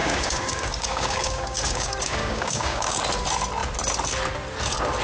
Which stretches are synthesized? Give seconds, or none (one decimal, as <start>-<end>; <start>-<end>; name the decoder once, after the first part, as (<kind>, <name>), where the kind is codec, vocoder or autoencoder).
0.0-3.0 (codec, DAC)